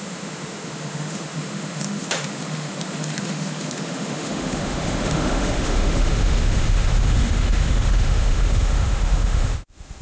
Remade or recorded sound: remade